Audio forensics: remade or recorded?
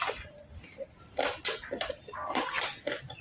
recorded